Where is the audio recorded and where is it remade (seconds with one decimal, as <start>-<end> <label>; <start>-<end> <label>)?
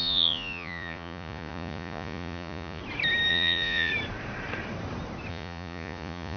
0.0-2.8 remade; 2.8-3.3 recorded; 3.3-3.9 remade; 3.9-5.3 recorded; 5.3-6.4 remade